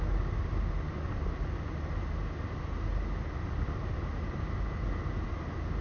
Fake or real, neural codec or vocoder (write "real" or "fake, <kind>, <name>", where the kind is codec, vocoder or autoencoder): real